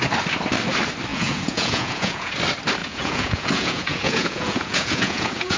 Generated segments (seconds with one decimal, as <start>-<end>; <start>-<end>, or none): 1.1-2.3; 2.8-5.6